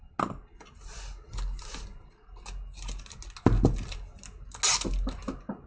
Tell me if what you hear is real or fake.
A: real